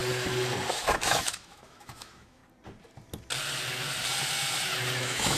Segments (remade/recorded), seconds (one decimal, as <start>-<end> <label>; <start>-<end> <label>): 0.0-0.7 recorded; 0.7-2.4 remade; 2.4-5.0 recorded; 5.0-5.4 remade